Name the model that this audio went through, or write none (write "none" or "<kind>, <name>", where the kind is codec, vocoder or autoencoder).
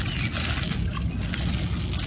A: none